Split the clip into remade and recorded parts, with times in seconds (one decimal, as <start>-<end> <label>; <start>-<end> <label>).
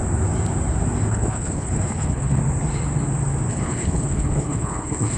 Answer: 0.0-1.1 recorded; 1.1-2.4 remade; 2.4-3.5 recorded; 3.5-5.2 remade